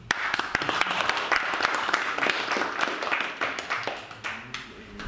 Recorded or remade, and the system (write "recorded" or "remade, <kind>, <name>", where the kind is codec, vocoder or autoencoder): remade, vocoder, BigVGAN v2